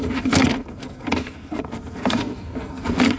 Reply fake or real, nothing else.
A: fake